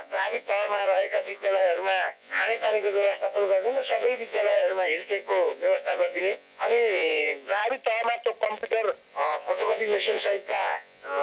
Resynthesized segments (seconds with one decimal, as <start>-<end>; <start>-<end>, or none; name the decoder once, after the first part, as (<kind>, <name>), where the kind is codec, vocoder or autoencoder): 0.0-7.6 (vocoder, Vocos); 9.1-11.2